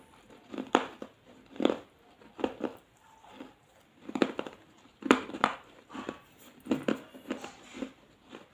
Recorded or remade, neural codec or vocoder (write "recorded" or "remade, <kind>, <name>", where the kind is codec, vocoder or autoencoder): remade, vocoder, BigVGAN v2